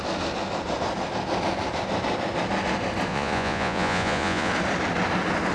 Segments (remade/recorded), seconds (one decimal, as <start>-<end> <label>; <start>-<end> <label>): 0.0-3.1 recorded; 3.1-4.5 remade; 4.5-5.5 recorded